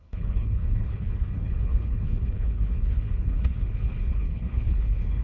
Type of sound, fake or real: fake